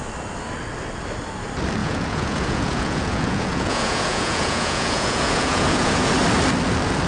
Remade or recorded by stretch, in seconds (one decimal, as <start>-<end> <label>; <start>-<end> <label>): 0.0-1.8 recorded; 1.8-6.1 remade; 6.1-7.1 recorded